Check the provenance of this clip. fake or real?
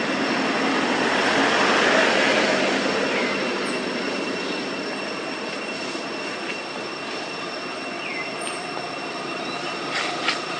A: real